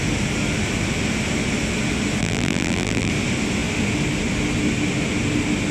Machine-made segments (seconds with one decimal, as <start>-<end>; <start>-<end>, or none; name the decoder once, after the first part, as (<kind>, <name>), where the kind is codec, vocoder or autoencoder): 2.2-3.1 (vocoder, BigVGAN v2)